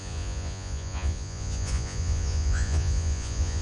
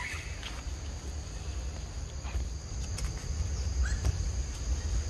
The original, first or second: second